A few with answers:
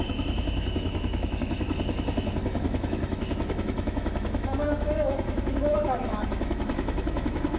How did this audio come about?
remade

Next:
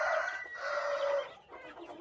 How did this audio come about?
recorded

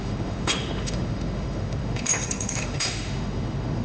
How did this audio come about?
remade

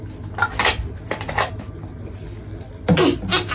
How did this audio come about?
recorded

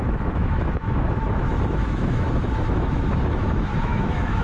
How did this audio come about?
remade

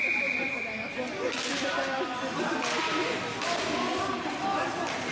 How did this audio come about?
recorded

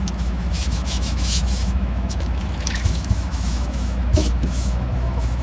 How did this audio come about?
remade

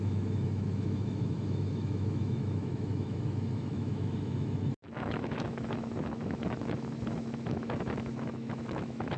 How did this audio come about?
remade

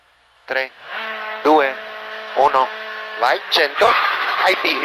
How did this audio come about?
remade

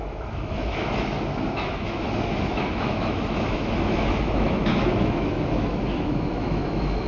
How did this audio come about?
remade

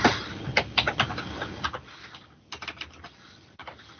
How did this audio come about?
recorded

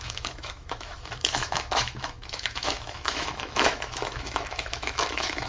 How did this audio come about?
remade